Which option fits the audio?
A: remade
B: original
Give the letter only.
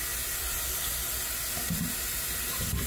B